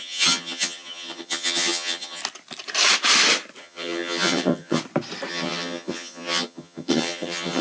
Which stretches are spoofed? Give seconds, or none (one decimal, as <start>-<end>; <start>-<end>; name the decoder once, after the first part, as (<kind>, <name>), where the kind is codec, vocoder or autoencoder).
0.0-2.2 (vocoder, HiFi-GAN); 3.6-4.8; 5.3-7.6